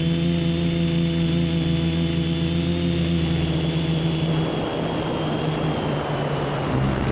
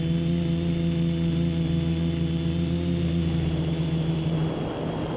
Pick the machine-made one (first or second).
second